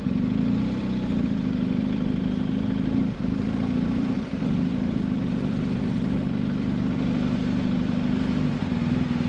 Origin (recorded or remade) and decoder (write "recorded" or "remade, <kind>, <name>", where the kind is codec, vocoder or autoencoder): remade, vocoder, BigVGAN v2